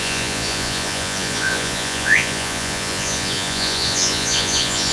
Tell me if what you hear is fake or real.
fake